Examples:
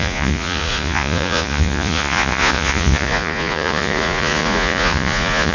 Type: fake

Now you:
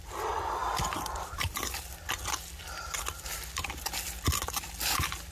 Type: real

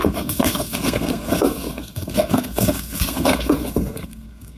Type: fake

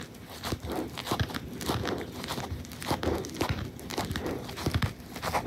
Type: real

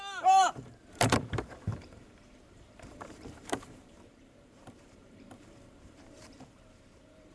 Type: fake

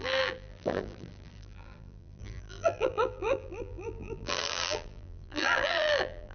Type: fake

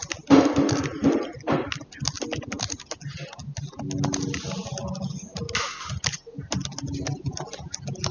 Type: real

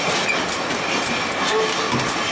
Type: real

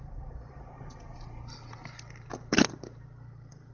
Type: real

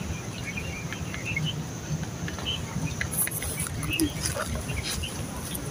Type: fake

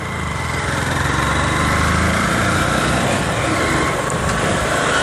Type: real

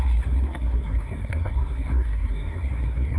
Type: fake